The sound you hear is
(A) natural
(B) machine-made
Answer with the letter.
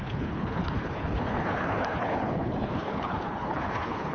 B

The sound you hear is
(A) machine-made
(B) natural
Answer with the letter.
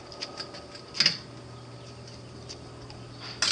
B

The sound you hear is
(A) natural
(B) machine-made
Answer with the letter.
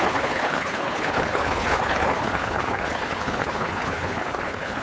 B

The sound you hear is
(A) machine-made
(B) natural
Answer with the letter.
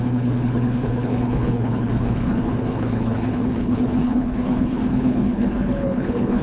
A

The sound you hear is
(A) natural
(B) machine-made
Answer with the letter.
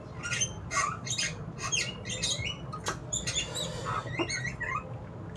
A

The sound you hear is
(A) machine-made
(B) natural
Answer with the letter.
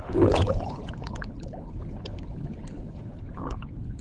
A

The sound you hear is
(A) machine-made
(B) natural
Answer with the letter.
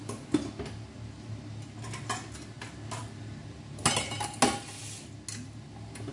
B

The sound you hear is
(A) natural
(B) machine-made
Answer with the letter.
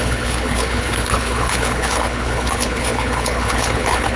B